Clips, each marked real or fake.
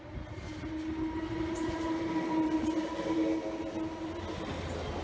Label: real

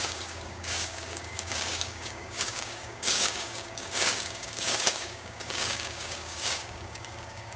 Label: fake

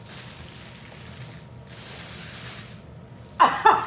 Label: real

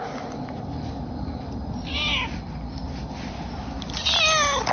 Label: real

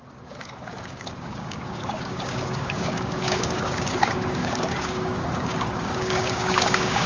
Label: fake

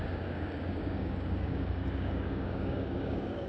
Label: fake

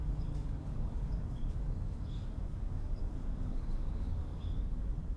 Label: fake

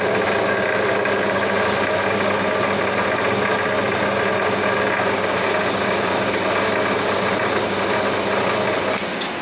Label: real